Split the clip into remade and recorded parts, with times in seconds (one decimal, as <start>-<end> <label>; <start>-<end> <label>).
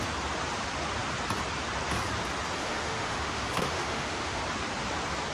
0.0-2.6 recorded; 2.6-4.4 remade; 4.4-5.3 recorded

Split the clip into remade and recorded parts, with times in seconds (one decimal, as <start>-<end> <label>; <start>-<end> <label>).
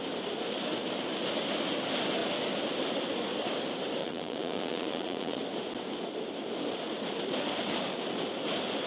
0.0-4.0 recorded; 4.0-5.4 remade; 5.4-8.9 recorded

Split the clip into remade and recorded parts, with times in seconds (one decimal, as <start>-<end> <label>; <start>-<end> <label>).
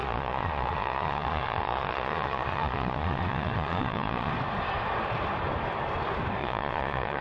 0.0-4.3 remade; 4.3-6.4 recorded; 6.4-7.2 remade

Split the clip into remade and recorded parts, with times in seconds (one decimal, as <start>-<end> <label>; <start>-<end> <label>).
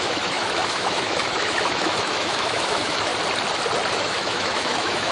0.0-3.1 remade; 3.1-3.9 recorded; 3.9-5.1 remade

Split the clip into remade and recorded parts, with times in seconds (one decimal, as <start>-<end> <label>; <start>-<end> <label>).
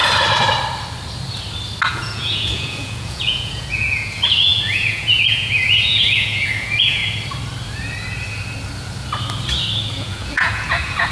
0.0-1.9 recorded; 1.9-7.0 remade; 7.0-9.9 recorded; 9.9-11.1 remade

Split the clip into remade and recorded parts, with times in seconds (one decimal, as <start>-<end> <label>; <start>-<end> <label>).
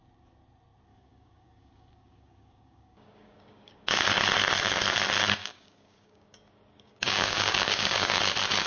0.0-0.9 recorded; 0.9-4.1 remade; 4.1-5.4 recorded; 5.4-8.2 remade; 8.2-8.7 recorded